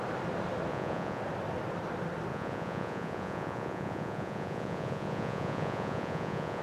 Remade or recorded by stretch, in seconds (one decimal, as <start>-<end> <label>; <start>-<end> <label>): 0.0-0.7 recorded; 0.7-1.2 remade; 1.2-2.3 recorded; 2.3-6.6 remade